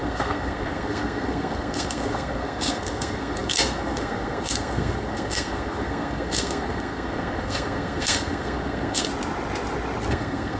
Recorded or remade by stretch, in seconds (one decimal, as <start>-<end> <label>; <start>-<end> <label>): 0.0-9.1 remade; 9.1-10.1 recorded; 10.1-10.6 remade